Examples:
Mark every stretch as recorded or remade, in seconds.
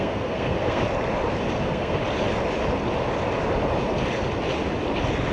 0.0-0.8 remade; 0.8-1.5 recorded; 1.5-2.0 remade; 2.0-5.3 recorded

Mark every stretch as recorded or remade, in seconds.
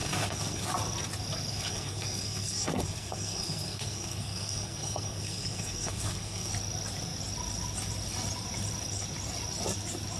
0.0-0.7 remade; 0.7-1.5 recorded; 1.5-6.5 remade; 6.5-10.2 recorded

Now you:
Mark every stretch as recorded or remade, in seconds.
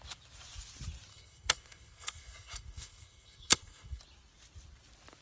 0.0-1.1 recorded; 1.1-4.0 remade; 4.0-5.2 recorded